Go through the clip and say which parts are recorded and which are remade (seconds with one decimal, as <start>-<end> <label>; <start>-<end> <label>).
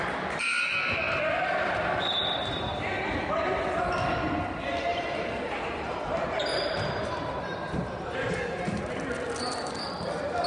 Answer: 0.0-4.9 recorded; 4.9-6.0 remade; 6.0-6.5 recorded; 6.5-9.1 remade; 9.1-10.5 recorded